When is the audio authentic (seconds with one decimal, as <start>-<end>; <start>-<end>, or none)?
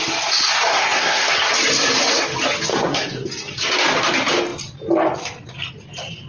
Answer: 0.0-0.7; 1.3-2.7; 3.3-6.3